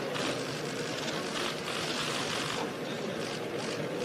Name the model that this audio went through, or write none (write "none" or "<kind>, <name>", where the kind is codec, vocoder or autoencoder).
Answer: none